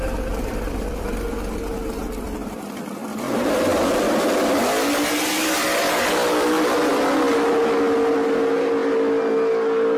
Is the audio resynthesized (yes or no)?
no